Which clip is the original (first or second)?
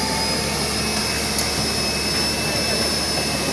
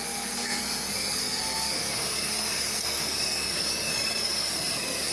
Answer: first